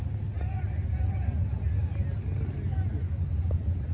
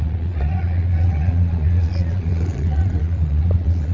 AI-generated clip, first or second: second